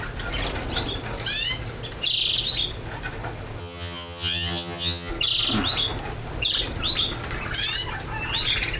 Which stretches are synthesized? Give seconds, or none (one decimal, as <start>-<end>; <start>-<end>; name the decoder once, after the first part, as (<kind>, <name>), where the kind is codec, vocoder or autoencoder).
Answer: 3.6-5.1 (vocoder, HiFi-GAN)

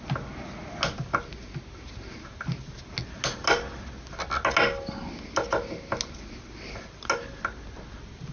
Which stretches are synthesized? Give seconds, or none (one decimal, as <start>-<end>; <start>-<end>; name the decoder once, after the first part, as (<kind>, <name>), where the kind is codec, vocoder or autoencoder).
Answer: none

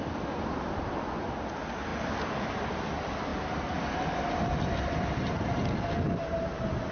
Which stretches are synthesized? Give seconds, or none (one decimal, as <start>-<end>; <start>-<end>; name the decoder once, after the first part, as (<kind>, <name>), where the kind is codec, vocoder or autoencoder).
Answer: none

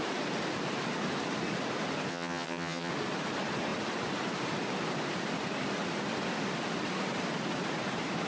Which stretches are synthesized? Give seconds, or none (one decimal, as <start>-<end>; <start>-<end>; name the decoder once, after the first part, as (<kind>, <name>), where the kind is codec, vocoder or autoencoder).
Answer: 2.1-2.9 (vocoder, HiFi-GAN)

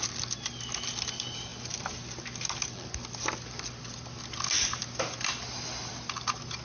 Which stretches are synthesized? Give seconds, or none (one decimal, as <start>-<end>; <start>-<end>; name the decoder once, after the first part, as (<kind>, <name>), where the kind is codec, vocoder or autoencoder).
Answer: none

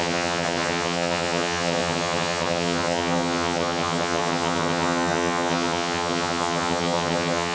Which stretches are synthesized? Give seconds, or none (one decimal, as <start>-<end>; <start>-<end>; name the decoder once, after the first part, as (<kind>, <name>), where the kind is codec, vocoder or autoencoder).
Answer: 0.0-7.5 (vocoder, HiFi-GAN)

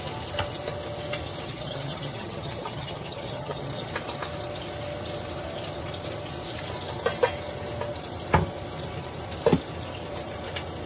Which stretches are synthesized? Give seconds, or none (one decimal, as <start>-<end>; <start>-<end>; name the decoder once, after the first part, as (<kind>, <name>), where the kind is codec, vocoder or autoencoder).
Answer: 1.5-3.9 (vocoder, HiFi-GAN)